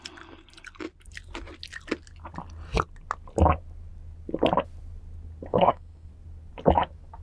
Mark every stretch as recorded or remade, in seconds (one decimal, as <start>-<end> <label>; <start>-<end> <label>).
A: 0.0-5.5 recorded; 5.5-6.1 remade; 6.1-7.2 recorded